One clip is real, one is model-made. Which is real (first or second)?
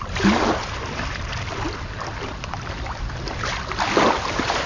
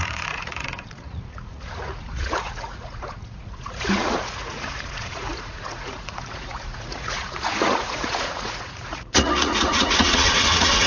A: first